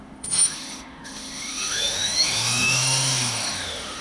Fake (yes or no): yes